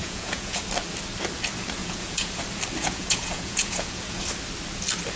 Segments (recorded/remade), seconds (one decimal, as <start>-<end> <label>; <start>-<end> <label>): 0.0-0.6 remade; 0.6-1.8 recorded; 1.8-2.4 remade; 2.4-2.8 recorded; 2.8-4.2 remade; 4.2-5.2 recorded